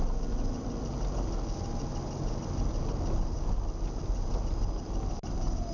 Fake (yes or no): no